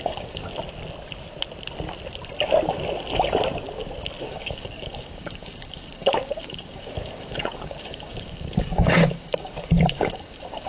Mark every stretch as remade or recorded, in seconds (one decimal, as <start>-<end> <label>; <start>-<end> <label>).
0.0-0.5 remade; 0.5-4.2 recorded; 4.2-10.7 remade